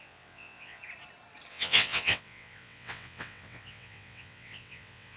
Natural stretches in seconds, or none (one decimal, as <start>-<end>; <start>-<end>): 0.8-1.5